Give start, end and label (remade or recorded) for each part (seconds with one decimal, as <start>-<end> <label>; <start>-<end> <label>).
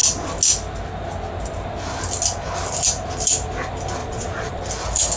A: 0.0-4.0 recorded; 4.0-4.6 remade; 4.6-5.2 recorded